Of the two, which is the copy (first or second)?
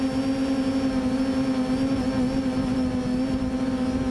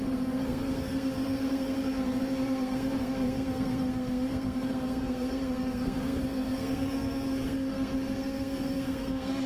second